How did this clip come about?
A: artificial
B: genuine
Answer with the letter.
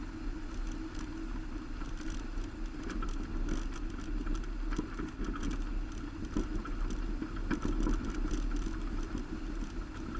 B